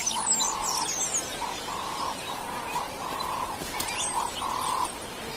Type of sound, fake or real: real